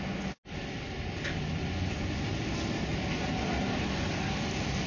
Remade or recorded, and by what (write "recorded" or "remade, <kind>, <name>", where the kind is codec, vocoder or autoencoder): recorded